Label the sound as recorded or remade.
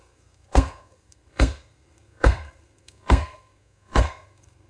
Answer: remade